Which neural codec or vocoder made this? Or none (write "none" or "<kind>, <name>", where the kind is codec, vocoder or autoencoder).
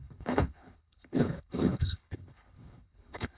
codec, HILCodec